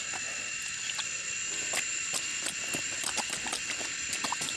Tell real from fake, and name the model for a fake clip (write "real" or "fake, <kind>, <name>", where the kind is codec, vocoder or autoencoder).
real